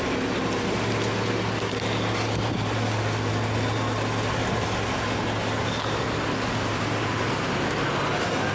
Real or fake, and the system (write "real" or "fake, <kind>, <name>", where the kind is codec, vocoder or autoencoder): real